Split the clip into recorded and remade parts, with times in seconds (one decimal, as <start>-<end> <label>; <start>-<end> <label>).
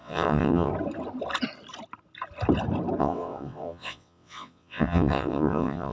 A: 0.0-0.7 remade; 0.7-3.0 recorded; 3.0-5.9 remade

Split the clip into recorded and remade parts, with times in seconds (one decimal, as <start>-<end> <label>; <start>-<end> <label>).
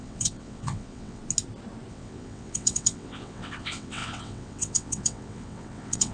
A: 0.0-1.2 remade; 1.2-1.9 recorded; 1.9-6.1 remade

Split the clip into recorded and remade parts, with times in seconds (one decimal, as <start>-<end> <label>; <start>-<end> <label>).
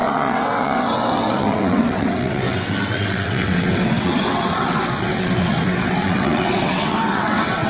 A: 0.0-7.7 remade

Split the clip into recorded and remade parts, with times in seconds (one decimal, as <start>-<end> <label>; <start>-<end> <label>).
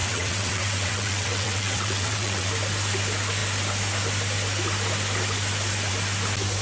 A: 0.0-2.5 remade; 2.5-6.6 recorded